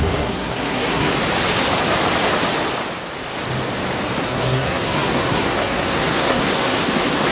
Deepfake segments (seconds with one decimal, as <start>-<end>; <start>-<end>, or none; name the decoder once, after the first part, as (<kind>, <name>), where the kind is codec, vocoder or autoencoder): 0.0-1.1 (codec, SNAC); 4.2-7.3